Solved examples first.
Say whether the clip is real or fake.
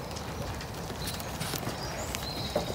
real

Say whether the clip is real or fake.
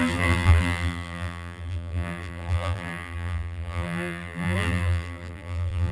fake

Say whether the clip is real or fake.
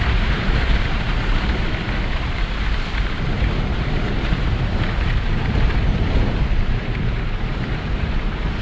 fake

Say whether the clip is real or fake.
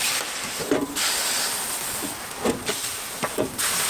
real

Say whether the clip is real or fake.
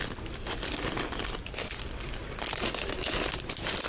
real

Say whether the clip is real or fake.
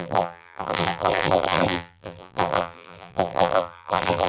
fake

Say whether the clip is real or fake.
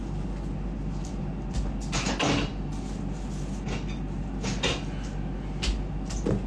real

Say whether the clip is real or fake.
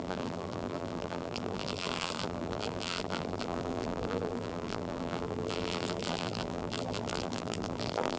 fake